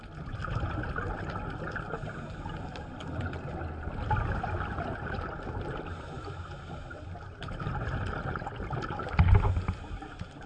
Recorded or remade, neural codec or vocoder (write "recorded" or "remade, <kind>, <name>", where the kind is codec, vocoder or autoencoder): recorded